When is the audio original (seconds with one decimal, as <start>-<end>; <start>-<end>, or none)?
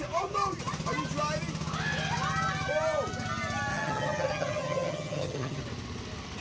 0.0-3.7; 5.6-6.4